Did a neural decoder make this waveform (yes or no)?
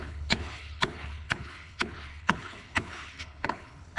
yes